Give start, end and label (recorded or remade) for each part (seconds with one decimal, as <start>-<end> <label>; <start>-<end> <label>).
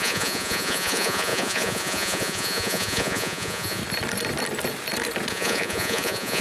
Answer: 0.0-3.8 remade; 3.8-5.3 recorded; 5.3-6.4 remade